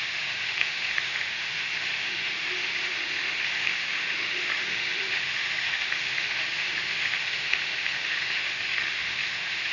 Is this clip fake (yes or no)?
yes